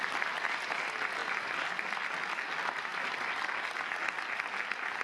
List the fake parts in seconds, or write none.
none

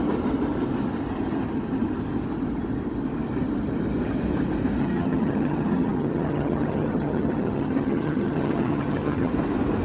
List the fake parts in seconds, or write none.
4.8-9.3 (vocoder, HiFi-GAN)

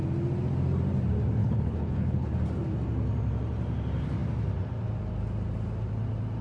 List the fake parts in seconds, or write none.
1.4-2.3 (codec, HILCodec)